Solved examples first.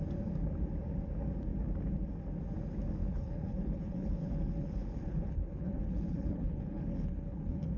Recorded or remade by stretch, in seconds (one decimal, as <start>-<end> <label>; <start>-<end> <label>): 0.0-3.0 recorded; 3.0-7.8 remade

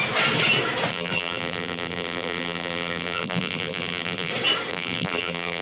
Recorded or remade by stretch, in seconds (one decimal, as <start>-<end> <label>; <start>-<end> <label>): 0.0-0.9 recorded; 0.9-4.3 remade; 4.3-4.7 recorded; 4.7-5.6 remade

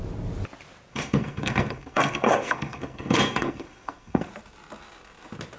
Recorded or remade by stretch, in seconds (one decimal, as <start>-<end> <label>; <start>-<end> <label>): 0.0-0.9 recorded; 0.9-4.3 remade; 4.3-5.6 recorded